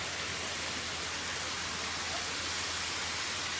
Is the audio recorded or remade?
recorded